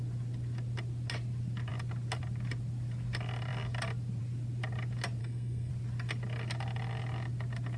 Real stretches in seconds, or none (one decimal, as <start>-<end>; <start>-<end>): 0.0-5.2; 5.7-7.8